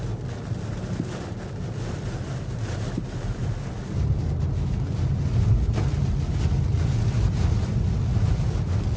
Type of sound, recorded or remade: recorded